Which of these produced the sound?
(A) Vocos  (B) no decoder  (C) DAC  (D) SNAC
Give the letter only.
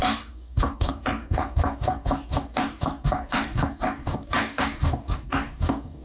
C